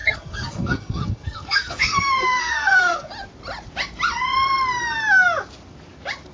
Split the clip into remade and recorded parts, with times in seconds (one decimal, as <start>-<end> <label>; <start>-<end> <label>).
0.0-3.1 remade; 3.1-6.3 recorded